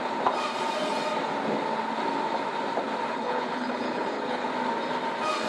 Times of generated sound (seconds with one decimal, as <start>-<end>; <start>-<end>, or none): 3.1-4.5